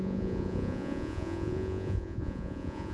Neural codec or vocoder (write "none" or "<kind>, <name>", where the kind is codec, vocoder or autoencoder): vocoder, Vocos